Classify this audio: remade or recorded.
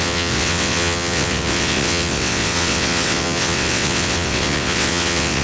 remade